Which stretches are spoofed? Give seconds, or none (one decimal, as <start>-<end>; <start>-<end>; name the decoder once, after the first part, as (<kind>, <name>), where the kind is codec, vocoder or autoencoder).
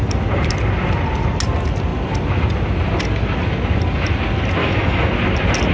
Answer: 4.6-5.1 (autoencoder, DAC-VAE)